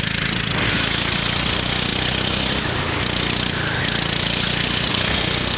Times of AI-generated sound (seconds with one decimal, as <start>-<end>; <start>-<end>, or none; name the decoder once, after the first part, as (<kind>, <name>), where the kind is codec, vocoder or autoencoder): 4.9-5.6 (codec, SNAC)